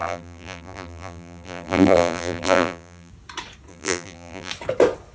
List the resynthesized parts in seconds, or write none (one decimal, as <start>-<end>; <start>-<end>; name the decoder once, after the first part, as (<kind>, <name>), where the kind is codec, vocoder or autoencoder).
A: 0.0-3.1 (vocoder, BigVGAN v2); 3.7-4.5